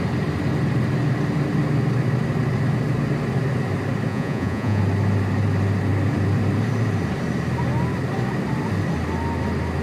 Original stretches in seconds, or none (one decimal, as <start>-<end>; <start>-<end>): 0.0-4.1; 4.8-9.8